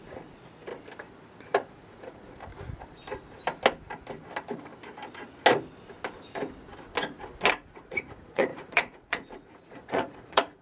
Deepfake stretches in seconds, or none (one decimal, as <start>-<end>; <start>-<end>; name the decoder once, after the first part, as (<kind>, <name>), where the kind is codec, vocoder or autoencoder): 0.0-0.7 (vocoder, Vocos); 1.7-2.5; 7.5-10.6